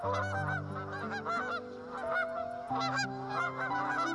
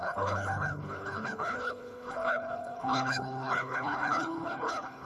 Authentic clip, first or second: first